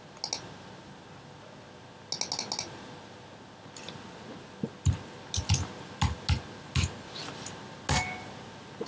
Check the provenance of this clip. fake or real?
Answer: real